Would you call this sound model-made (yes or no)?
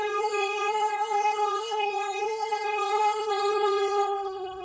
yes